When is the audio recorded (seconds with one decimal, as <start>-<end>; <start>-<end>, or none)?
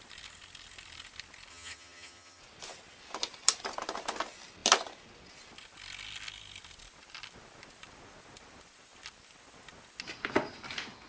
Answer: 0.0-1.5; 2.4-11.1